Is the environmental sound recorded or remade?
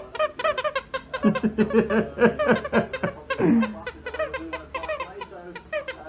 recorded